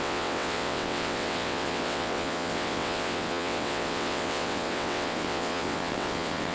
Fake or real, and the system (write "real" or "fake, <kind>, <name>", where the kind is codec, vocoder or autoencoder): fake, vocoder, WaveNeXt